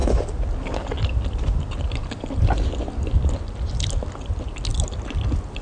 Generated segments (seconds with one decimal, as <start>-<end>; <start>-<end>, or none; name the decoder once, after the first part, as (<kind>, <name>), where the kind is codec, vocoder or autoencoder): none